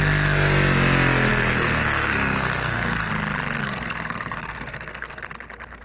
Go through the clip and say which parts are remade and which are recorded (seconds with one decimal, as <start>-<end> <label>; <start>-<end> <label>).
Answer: 0.0-1.3 recorded; 1.3-3.1 remade; 3.1-3.6 recorded; 3.6-5.2 remade; 5.2-5.8 recorded